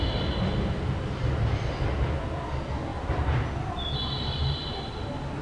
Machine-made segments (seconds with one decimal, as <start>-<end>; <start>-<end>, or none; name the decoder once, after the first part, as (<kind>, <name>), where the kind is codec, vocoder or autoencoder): none